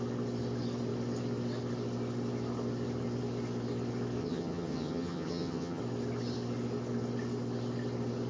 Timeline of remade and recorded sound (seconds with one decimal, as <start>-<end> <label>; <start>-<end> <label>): 0.0-4.2 recorded; 4.2-5.8 remade; 5.8-8.3 recorded